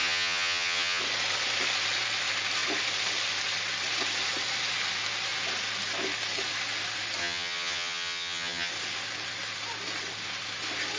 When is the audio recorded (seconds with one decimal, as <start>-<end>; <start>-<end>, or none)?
1.0-7.2; 8.7-11.0